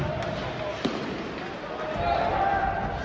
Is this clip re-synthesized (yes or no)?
no